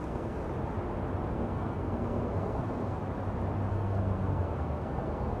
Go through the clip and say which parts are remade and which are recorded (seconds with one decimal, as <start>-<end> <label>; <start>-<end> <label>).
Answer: 0.0-0.4 remade; 0.4-1.3 recorded; 1.3-3.0 remade; 3.0-3.7 recorded; 3.7-5.4 remade